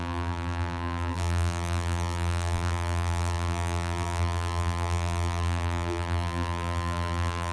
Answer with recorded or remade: remade